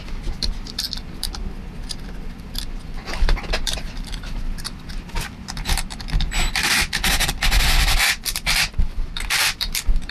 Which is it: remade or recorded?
remade